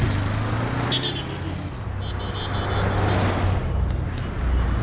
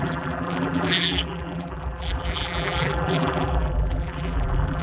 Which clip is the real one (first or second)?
first